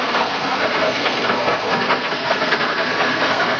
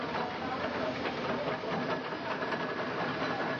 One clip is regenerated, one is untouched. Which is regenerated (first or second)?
first